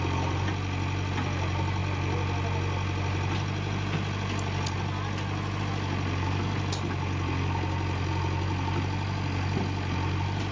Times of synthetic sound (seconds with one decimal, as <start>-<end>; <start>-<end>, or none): none